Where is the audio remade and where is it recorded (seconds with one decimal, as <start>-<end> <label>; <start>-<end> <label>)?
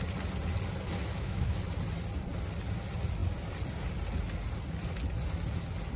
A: 0.0-1.1 recorded; 1.1-1.6 remade; 1.6-6.0 recorded